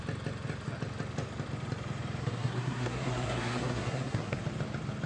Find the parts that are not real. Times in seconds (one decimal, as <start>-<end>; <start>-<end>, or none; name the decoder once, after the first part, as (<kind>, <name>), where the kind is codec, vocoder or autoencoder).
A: 2.2-4.4 (codec, SNAC)